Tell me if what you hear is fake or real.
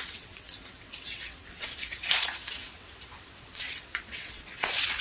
fake